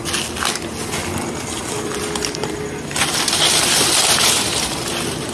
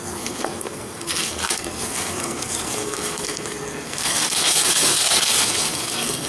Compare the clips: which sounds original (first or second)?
first